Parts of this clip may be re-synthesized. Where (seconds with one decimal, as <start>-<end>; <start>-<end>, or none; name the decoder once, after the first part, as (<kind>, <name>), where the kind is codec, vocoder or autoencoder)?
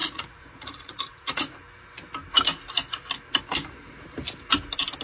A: 0.0-1.6 (vocoder, Vocos)